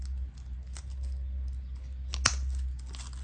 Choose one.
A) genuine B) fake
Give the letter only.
A